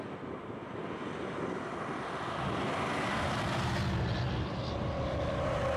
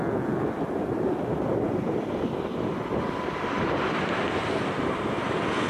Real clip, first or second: first